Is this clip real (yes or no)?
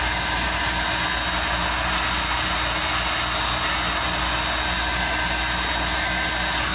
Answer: yes